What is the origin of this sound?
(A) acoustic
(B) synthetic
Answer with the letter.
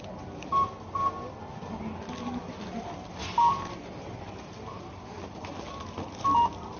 A